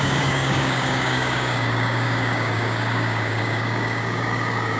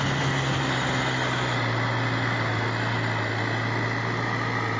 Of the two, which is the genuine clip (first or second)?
second